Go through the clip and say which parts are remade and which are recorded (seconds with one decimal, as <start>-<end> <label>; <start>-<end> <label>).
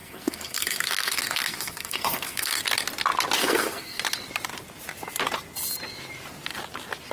0.0-2.6 remade; 2.6-3.4 recorded; 3.4-4.0 remade; 4.0-7.1 recorded